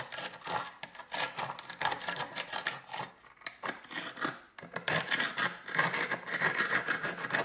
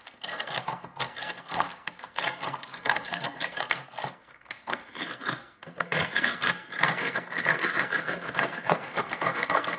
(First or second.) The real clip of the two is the first